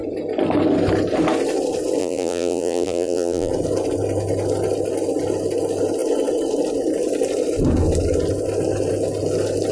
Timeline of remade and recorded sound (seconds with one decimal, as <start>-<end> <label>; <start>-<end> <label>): 0.0-2.0 recorded; 2.0-3.5 remade; 3.5-9.7 recorded

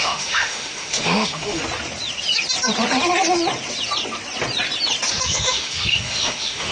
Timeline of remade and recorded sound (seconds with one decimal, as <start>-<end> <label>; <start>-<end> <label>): 0.0-1.6 remade; 1.6-5.1 recorded; 5.1-6.7 remade

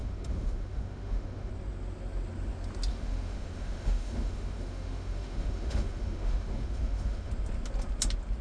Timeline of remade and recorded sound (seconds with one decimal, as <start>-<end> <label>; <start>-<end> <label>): 0.0-1.5 remade; 1.5-2.9 recorded; 2.9-7.3 remade; 7.3-8.4 recorded

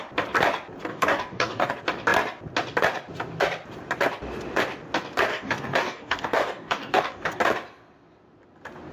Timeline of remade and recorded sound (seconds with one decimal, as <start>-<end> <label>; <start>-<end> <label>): 0.0-0.9 recorded; 0.9-1.7 remade; 1.7-5.3 recorded; 5.3-7.4 remade; 7.4-8.9 recorded

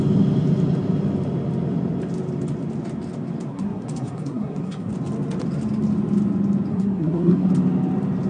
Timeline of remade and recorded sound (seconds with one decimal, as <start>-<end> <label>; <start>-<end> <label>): 0.0-3.5 recorded; 3.5-4.9 remade; 4.9-6.7 recorded; 6.7-7.5 remade; 7.5-8.3 recorded

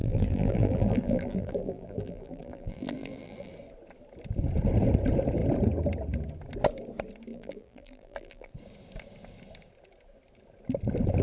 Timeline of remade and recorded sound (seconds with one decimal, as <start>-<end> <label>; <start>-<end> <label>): 0.0-3.5 remade; 3.5-7.3 recorded; 7.3-8.5 remade; 8.5-11.2 recorded

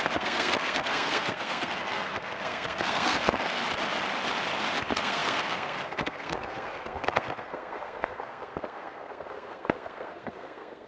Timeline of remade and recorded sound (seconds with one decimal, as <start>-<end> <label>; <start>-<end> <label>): 0.0-3.6 remade; 3.6-4.8 recorded; 4.8-10.9 remade

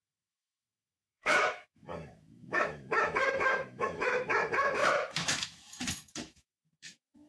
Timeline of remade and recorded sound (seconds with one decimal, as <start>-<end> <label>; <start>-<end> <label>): 0.0-7.3 remade